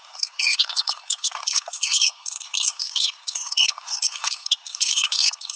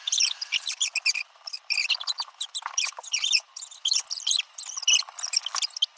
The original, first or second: second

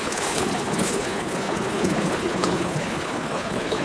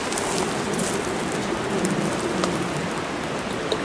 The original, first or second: second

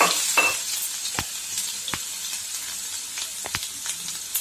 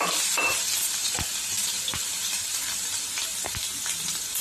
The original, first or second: first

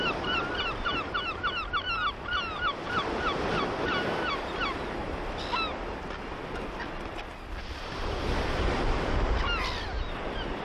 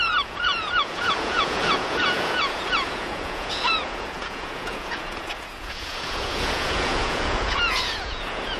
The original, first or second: first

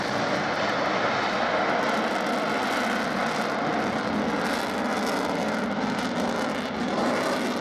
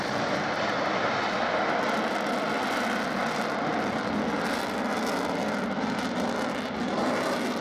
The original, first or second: first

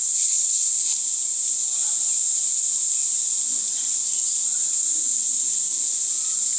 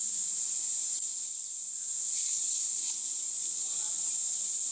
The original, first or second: first